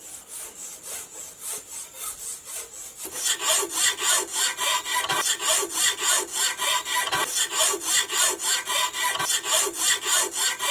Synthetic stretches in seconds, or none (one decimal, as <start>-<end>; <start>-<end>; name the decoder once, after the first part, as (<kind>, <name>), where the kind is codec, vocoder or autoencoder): none